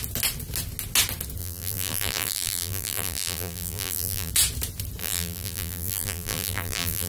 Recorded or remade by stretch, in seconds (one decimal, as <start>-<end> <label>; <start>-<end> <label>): 0.0-1.4 recorded; 1.4-4.3 remade; 4.3-5.0 recorded; 5.0-7.1 remade